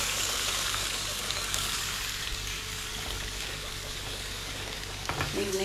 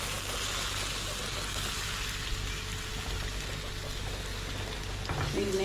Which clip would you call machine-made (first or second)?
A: first